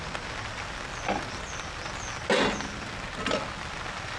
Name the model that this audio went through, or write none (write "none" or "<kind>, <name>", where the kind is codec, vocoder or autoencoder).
none